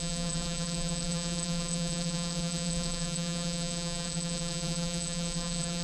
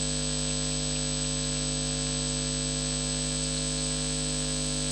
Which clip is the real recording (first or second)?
second